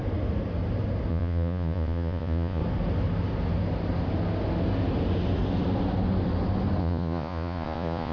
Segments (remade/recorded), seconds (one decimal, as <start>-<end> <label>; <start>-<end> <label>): 0.0-1.1 recorded; 1.1-2.6 remade; 2.6-6.8 recorded; 6.8-8.1 remade